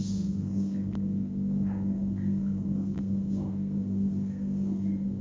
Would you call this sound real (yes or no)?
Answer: no